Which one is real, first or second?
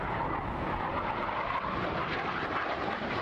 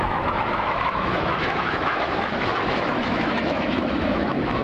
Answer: first